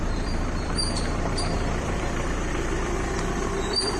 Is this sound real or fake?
fake